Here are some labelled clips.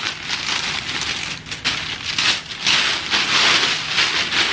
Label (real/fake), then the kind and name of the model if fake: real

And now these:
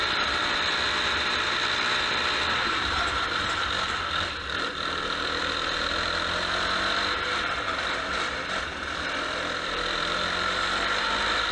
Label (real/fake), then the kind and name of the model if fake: fake, vocoder, BigVGAN v2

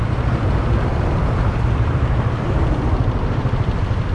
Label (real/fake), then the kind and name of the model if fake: fake, vocoder, BigVGAN v2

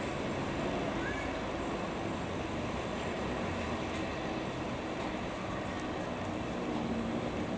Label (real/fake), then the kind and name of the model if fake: real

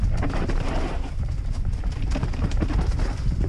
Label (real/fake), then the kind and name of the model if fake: fake, vocoder, BigVGAN v2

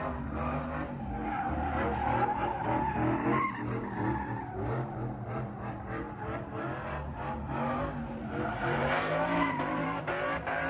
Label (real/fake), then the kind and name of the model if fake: fake, vocoder, BigVGAN v2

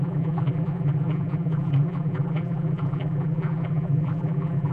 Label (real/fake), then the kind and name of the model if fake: fake, vocoder, BigVGAN v2